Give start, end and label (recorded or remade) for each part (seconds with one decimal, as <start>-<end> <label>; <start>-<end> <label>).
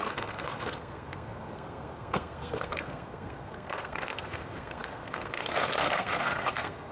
0.0-6.9 remade